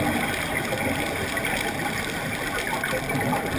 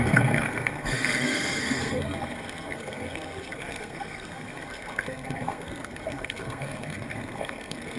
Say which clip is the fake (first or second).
second